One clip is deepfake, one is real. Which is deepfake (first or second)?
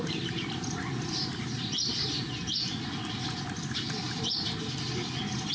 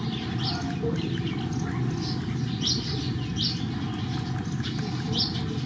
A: first